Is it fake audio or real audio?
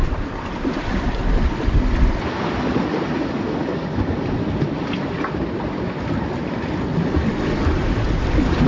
real